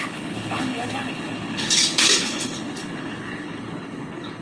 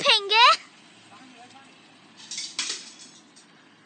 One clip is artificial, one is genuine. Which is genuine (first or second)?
second